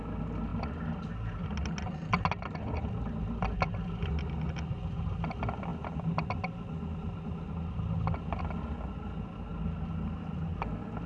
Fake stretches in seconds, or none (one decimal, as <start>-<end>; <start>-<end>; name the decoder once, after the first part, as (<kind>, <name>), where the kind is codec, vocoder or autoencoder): none